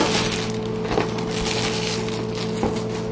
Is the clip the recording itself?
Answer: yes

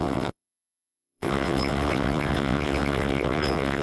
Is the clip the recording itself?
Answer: no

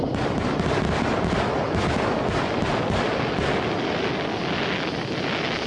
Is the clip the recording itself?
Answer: yes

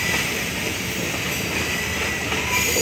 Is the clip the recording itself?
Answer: no